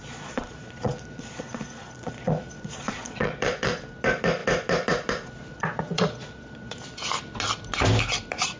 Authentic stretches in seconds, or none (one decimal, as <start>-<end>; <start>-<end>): 3.8-5.5; 6.8-8.6